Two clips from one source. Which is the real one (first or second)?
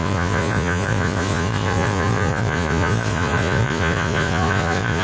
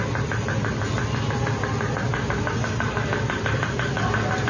second